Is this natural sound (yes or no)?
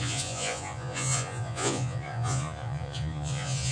no